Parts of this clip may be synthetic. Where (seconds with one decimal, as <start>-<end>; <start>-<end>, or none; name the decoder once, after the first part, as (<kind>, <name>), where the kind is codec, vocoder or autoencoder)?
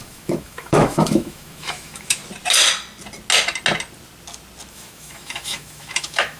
0.0-2.2 (autoencoder, DAC-VAE); 4.7-6.4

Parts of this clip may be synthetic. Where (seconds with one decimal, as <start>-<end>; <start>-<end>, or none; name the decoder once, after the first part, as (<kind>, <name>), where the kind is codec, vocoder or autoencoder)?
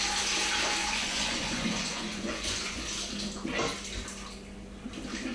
0.8-2.8 (vocoder, Vocos)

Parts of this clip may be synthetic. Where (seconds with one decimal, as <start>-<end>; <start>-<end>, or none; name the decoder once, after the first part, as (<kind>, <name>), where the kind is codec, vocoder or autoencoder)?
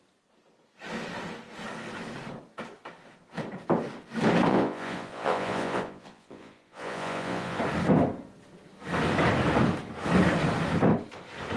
4.5-7.6 (vocoder, Vocos)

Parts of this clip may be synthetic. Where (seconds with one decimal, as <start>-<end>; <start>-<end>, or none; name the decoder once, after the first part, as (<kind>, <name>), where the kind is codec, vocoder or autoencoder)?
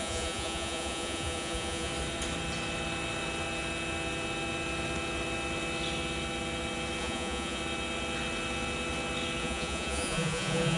0.0-1.9 (vocoder, Vocos); 7.0-7.6; 9.4-10.8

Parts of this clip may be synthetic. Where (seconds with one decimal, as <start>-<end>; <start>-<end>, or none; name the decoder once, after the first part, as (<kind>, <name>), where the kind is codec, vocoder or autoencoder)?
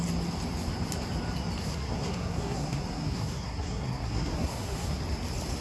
1.6-5.0 (codec, SNAC)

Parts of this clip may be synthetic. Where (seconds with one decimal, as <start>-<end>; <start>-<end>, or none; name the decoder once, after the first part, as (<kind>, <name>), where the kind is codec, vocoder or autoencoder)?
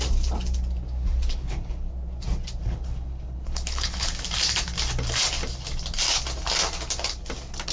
1.3-1.9 (codec, HILCodec); 2.6-4.1